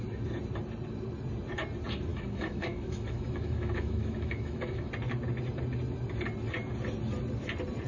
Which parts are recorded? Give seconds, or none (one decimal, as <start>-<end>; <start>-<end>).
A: 0.0-2.1; 4.9-7.9